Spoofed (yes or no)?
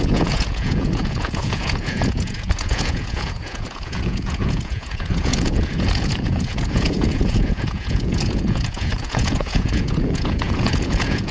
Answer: yes